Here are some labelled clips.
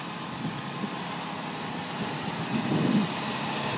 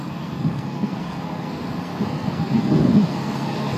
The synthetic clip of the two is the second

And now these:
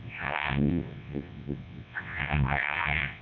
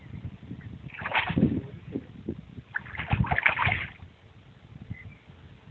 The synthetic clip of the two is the first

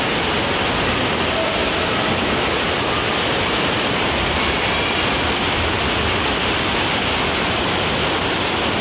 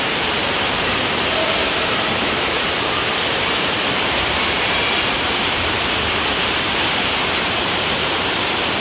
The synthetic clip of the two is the second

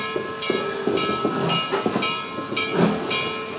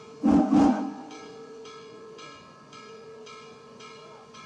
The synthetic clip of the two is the second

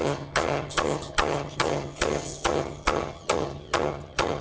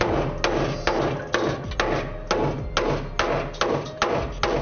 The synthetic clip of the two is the first